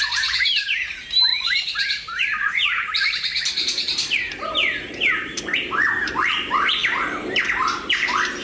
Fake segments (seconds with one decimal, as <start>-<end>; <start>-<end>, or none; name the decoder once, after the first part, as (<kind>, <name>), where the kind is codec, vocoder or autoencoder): 0.0-8.4 (vocoder, BigVGAN v2)